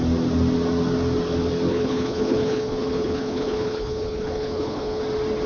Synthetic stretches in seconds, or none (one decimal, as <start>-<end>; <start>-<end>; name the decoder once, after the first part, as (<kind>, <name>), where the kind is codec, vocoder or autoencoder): 1.7-5.0 (codec, HILCodec)